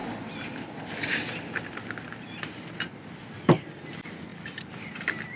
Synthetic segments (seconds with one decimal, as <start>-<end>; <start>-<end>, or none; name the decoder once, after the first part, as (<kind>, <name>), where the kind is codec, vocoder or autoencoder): none